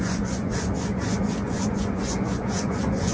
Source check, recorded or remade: remade